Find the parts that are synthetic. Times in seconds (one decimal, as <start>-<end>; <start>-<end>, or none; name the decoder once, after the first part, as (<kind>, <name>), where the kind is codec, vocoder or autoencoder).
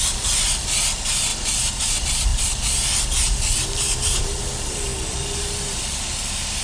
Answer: none